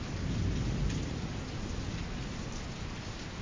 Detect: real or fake real